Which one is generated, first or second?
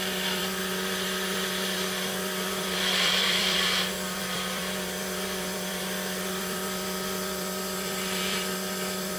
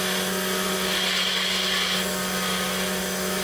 first